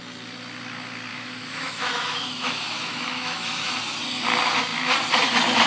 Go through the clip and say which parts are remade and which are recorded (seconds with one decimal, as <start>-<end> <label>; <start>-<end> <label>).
0.0-1.1 recorded; 1.1-3.7 remade; 3.7-5.7 recorded